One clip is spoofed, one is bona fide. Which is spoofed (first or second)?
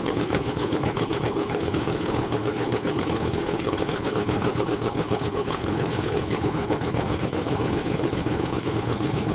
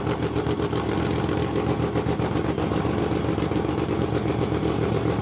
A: first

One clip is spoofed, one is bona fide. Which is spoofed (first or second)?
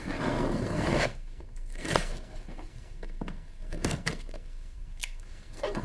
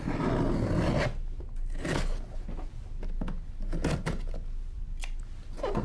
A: first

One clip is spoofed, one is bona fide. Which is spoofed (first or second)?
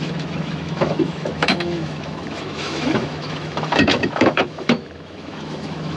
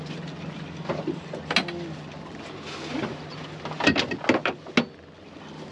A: first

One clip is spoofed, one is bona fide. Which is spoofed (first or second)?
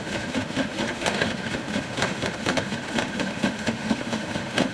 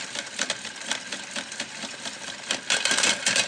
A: first